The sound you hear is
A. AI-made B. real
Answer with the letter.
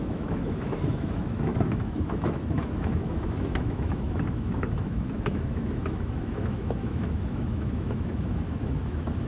A